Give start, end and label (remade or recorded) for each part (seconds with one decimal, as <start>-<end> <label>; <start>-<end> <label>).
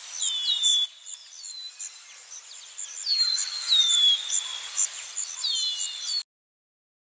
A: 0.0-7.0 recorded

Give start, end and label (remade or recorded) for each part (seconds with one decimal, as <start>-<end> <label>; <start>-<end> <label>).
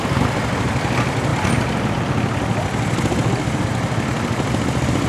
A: 0.0-5.1 recorded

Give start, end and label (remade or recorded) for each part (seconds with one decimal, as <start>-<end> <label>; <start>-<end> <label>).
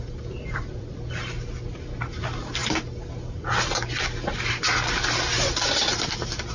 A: 0.0-2.6 remade; 2.6-6.5 recorded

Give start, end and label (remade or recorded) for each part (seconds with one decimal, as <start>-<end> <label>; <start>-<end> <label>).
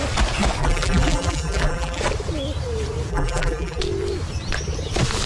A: 0.0-0.6 recorded; 0.6-2.0 remade; 2.0-3.1 recorded; 3.1-3.8 remade; 3.8-5.3 recorded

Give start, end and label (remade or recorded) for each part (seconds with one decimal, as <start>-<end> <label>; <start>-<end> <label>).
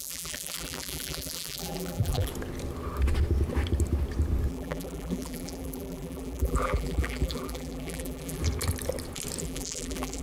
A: 0.0-2.3 remade; 2.3-4.5 recorded; 4.5-8.4 remade; 8.4-9.4 recorded; 9.4-10.2 remade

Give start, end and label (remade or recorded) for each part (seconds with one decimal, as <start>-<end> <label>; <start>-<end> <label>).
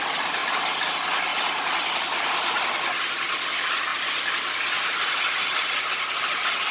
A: 0.0-6.7 remade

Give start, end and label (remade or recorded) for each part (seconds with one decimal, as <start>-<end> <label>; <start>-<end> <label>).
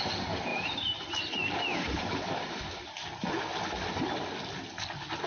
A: 0.0-0.5 recorded; 0.5-1.2 remade; 1.2-1.7 recorded; 1.7-2.8 remade; 2.8-5.3 recorded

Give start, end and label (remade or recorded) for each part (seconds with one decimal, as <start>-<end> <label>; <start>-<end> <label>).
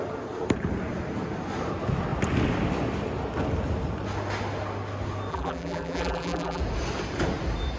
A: 0.0-5.3 recorded; 5.3-6.6 remade; 6.6-7.8 recorded